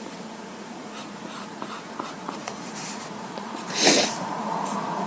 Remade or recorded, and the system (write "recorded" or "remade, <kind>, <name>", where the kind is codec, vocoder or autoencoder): remade, vocoder, Vocos